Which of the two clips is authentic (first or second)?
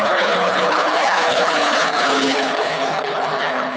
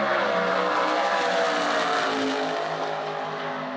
second